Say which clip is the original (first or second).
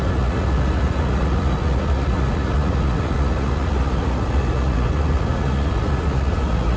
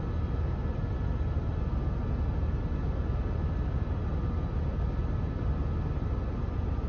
second